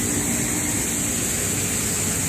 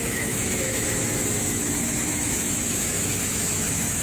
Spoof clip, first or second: second